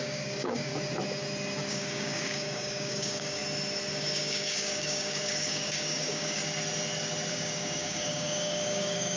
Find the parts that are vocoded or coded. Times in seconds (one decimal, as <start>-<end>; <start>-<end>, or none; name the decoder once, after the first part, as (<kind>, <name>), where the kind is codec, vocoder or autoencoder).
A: 0.0-0.7 (codec, DAC); 1.7-3.4; 3.9-6.4; 7.3-9.2